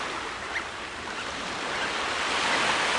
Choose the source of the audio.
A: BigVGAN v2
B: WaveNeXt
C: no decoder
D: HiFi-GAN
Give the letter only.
C